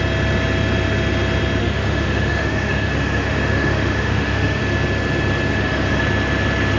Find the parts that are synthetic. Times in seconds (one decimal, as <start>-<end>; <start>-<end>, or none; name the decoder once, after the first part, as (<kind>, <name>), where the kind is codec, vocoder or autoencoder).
1.6-4.6 (autoencoder, DAC-VAE); 5.5-6.0